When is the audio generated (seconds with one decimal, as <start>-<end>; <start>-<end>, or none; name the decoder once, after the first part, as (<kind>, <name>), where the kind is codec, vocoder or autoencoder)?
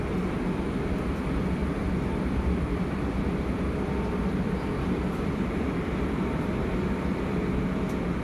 1.6-6.5 (vocoder, BigVGAN v2)